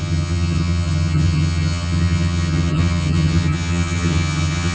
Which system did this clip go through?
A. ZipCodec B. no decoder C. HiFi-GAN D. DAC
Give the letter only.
C